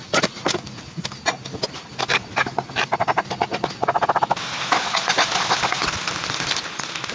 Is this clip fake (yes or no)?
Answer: no